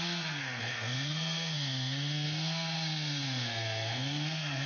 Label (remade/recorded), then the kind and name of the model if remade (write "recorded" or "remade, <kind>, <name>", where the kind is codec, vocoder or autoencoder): remade, codec, SNAC